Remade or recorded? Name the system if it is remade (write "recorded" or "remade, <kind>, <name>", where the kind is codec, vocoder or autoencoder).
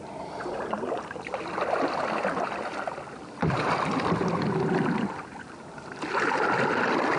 remade, vocoder, BigVGAN v2